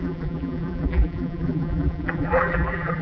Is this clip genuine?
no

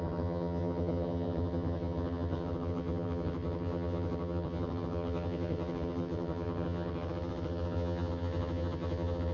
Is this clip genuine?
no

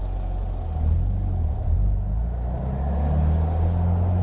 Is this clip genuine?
yes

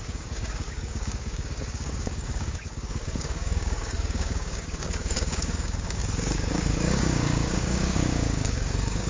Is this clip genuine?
no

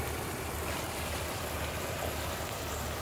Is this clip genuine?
yes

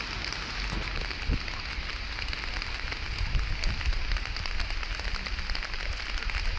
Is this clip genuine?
yes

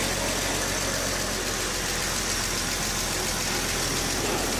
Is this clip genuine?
yes